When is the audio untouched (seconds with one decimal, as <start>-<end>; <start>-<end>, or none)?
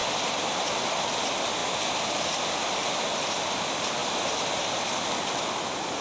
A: 0.0-6.0